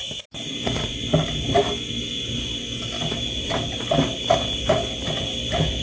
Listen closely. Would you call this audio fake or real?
real